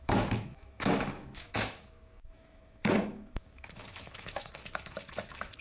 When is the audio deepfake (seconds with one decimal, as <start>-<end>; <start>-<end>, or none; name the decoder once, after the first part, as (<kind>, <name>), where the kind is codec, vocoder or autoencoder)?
0.0-5.6 (autoencoder, DAC-VAE)